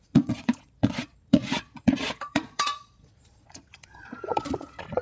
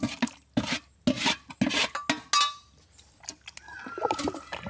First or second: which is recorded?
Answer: second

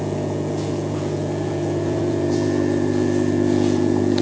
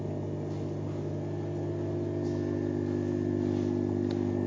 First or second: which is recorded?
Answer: second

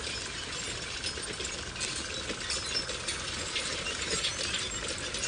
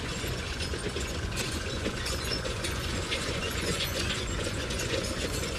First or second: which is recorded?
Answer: first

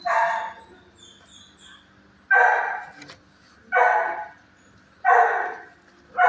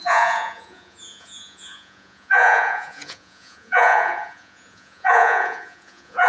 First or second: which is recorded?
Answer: first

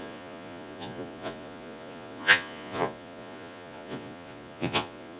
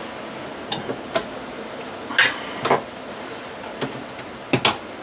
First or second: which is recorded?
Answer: second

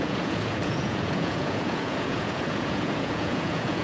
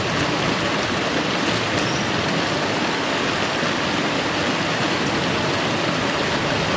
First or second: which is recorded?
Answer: second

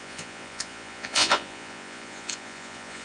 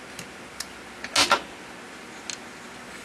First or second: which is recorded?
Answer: second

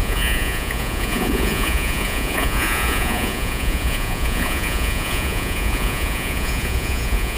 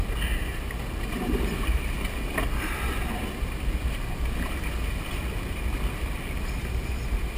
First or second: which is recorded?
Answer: second